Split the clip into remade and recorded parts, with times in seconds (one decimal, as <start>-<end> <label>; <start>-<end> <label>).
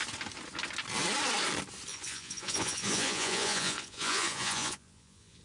0.0-1.9 recorded; 1.9-5.4 remade